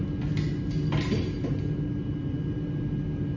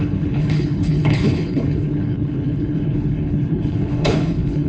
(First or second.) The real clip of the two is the first